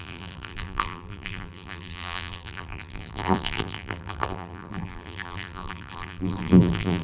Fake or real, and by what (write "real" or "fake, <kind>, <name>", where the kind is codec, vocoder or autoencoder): fake, vocoder, BigVGAN v2